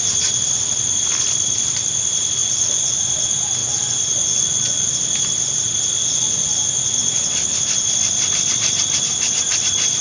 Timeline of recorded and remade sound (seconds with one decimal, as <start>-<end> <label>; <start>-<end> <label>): 0.0-2.4 recorded; 2.4-3.0 remade; 3.0-3.6 recorded; 3.6-4.9 remade; 4.9-6.0 recorded; 6.0-6.6 remade; 6.6-10.0 recorded